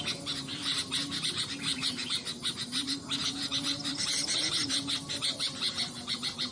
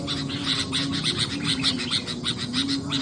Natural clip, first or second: second